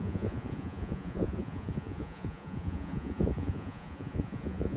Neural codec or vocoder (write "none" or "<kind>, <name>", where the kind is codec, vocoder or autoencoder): vocoder, Vocos